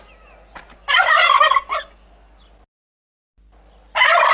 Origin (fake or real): real